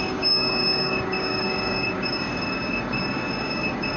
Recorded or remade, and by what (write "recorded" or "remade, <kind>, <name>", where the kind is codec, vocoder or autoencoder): remade, codec, DAC